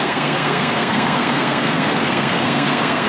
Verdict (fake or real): fake